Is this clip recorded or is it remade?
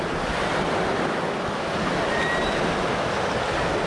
recorded